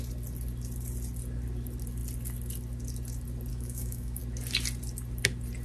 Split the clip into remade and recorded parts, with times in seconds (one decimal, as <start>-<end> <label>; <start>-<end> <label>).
0.0-3.5 recorded; 3.5-4.2 remade; 4.2-5.6 recorded